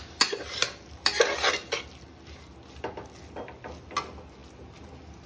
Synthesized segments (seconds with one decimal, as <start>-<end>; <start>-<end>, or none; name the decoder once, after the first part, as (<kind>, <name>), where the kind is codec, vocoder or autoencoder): none

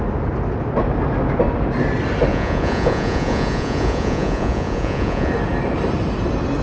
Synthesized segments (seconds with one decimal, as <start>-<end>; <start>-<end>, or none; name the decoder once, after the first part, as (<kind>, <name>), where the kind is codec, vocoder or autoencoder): 2.3-5.3 (vocoder, Vocos)

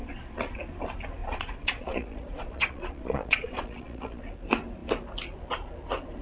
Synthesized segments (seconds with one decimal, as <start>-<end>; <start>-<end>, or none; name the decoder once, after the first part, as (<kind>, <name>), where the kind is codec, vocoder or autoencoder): 0.0-0.6 (vocoder, Vocos); 1.2-4.2

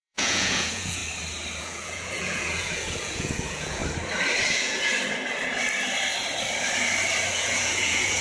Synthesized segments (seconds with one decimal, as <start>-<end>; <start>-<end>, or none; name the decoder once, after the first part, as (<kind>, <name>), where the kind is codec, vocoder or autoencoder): 0.0-1.0 (vocoder, Vocos); 1.6-3.8; 4.5-4.9; 7.3-8.2

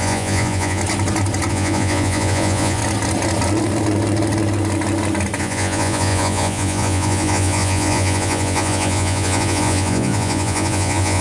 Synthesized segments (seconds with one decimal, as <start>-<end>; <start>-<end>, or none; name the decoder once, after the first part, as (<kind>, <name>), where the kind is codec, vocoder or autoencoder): 0.0-0.8 (vocoder, Vocos); 1.5-2.8; 5.4-11.2

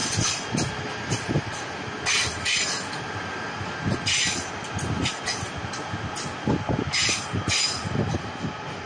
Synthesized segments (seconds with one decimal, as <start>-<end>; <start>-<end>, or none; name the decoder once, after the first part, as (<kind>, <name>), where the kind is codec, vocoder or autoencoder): none